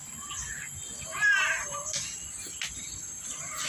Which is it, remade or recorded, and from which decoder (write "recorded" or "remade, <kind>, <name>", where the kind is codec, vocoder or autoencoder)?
recorded